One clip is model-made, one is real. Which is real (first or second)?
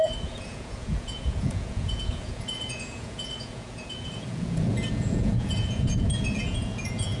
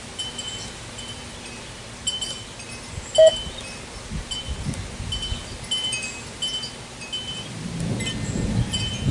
second